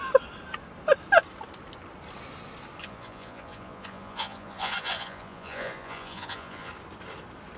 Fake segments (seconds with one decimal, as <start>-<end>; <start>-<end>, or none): 2.8-6.7